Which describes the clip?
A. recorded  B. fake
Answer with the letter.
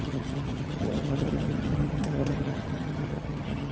B